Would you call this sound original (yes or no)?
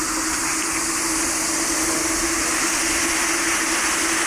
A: yes